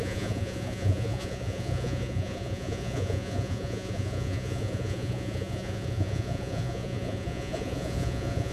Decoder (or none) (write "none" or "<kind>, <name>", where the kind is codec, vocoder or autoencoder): vocoder, Vocos